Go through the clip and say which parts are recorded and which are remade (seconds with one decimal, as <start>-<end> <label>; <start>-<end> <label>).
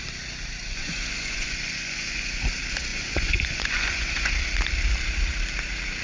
0.0-0.6 recorded; 0.6-2.5 remade; 2.5-2.9 recorded; 2.9-4.3 remade; 4.3-6.0 recorded